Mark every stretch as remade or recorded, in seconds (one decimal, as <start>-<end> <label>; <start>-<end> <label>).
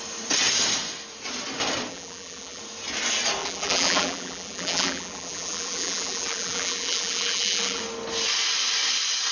0.0-1.9 recorded; 1.9-2.6 remade; 2.6-3.4 recorded; 3.4-7.8 remade; 7.8-9.3 recorded